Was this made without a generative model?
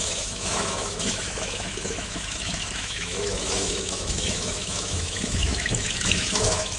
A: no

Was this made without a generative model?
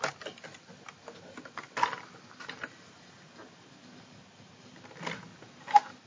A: yes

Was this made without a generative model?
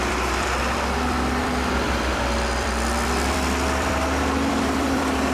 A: no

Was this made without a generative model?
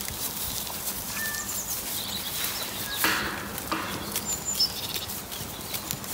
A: yes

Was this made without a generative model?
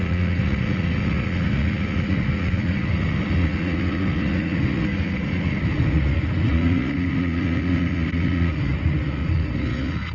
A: no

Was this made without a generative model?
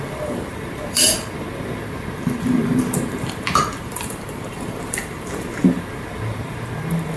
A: no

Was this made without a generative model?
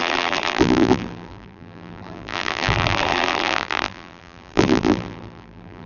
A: no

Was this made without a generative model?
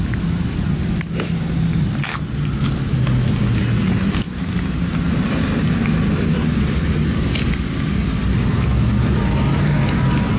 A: yes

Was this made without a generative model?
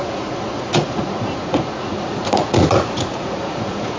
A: no